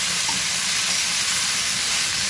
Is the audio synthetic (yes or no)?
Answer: no